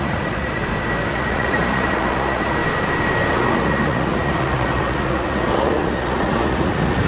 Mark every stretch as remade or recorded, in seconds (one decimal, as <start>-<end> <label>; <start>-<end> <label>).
0.0-0.6 remade; 0.6-1.1 recorded; 1.1-2.6 remade; 2.6-3.3 recorded; 3.3-7.1 remade